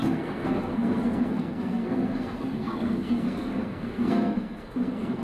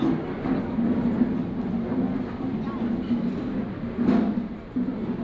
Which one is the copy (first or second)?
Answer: first